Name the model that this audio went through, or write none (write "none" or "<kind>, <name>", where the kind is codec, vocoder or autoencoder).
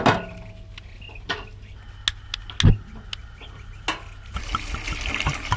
none